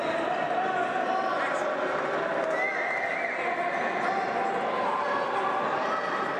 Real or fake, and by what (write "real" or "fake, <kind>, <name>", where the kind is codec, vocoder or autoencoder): real